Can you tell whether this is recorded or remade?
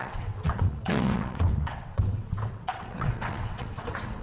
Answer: remade